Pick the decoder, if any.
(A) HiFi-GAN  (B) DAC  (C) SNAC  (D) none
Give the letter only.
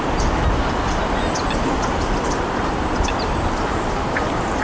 D